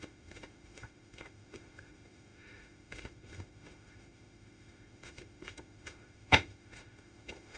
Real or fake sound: fake